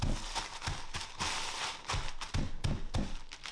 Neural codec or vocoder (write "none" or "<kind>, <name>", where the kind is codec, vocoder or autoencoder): none